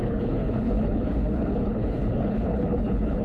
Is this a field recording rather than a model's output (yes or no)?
no